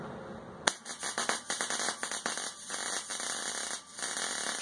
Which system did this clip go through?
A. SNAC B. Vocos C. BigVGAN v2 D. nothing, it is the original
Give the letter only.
D